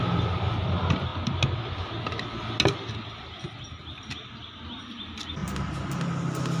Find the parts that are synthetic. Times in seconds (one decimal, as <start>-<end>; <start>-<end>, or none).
none